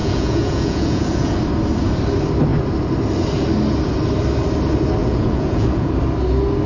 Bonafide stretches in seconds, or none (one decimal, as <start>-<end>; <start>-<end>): 1.4-5.0; 5.9-6.7